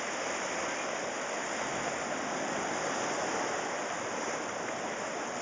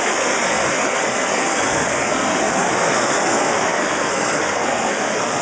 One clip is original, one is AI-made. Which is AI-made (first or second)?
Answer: second